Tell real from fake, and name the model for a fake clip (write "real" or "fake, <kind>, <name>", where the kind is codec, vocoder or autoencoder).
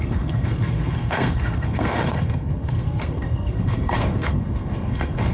fake, codec, SNAC